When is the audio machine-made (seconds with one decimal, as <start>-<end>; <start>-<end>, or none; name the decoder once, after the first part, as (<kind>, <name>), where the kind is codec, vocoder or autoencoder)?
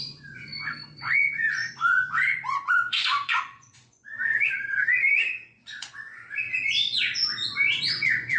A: 0.0-0.5 (vocoder, Vocos); 1.0-8.4